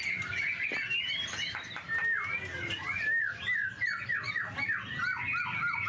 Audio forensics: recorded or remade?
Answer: recorded